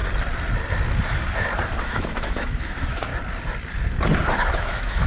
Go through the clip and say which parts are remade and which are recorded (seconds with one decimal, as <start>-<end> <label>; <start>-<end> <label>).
0.0-1.8 recorded; 1.8-3.1 remade; 3.1-4.5 recorded; 4.5-5.1 remade